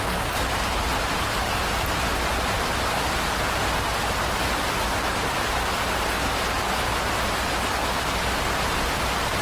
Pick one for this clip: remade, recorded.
recorded